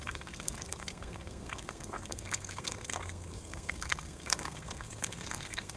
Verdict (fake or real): fake